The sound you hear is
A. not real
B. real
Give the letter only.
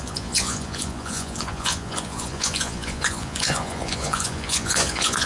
A